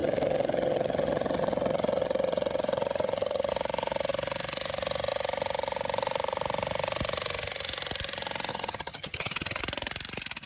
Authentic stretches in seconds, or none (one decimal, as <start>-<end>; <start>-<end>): 3.5-8.5; 9.6-10.5